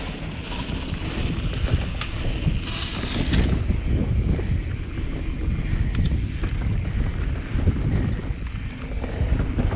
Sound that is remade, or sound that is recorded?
recorded